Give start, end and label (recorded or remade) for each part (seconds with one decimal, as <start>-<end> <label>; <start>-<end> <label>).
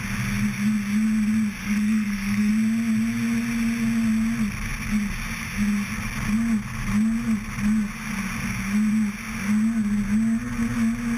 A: 0.0-1.6 recorded; 1.6-2.5 remade; 2.5-11.2 recorded